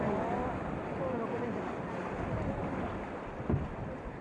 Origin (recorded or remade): recorded